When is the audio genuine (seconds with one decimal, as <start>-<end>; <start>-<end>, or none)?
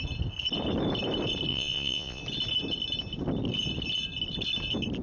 0.0-1.5; 2.2-5.0